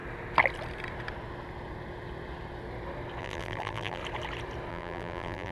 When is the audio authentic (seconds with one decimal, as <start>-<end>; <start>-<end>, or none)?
0.0-3.2; 4.0-4.7